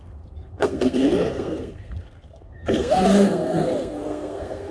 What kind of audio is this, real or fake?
fake